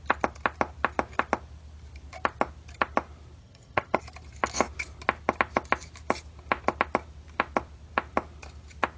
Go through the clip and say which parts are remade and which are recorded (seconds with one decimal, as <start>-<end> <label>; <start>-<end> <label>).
0.0-3.4 recorded; 3.4-4.0 remade; 4.0-9.0 recorded

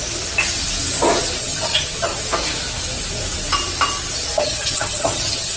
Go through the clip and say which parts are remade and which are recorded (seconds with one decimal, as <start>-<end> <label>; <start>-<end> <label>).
0.0-1.4 recorded; 1.4-2.1 remade; 2.1-4.4 recorded; 4.4-5.6 remade

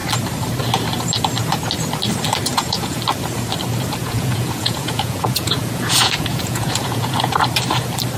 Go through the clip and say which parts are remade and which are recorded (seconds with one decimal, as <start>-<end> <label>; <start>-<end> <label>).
0.0-2.5 recorded; 2.5-3.0 remade; 3.0-4.0 recorded; 4.0-7.3 remade; 7.3-8.2 recorded

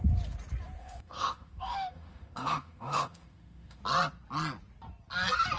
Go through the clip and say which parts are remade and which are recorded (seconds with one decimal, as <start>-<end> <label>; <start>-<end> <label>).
0.0-0.8 recorded; 0.8-3.8 remade; 3.8-5.6 recorded